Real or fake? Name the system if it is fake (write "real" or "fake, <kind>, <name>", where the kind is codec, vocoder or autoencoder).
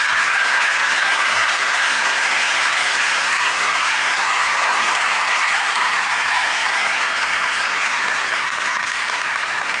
fake, codec, SNAC